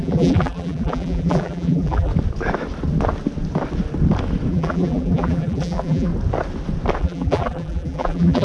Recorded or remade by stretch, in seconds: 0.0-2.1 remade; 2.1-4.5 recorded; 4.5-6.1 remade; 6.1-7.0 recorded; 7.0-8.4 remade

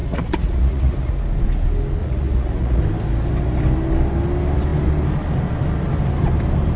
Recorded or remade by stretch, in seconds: 0.0-1.1 remade; 1.1-2.0 recorded; 2.0-2.8 remade; 2.8-6.8 recorded